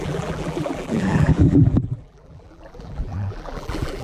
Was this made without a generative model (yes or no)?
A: no